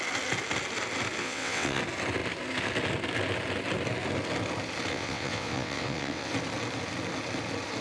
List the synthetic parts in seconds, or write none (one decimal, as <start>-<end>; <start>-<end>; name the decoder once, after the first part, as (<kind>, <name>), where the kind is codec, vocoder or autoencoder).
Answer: 1.2-1.8 (vocoder, WaveNeXt); 4.9-6.3